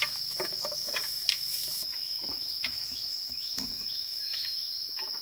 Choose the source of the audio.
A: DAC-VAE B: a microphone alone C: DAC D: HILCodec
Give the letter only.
A